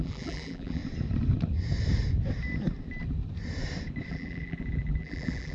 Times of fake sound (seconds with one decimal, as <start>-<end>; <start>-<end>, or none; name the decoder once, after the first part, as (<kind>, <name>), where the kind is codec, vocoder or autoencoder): 0.0-0.8 (vocoder, BigVGAN v2); 4.1-5.5